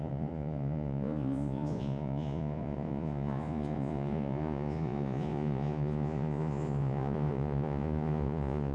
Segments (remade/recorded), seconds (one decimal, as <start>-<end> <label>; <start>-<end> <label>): 0.0-8.7 remade